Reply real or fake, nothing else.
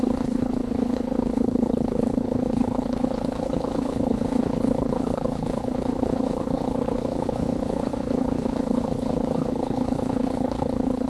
fake